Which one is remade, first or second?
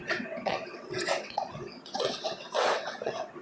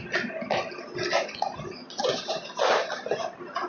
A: first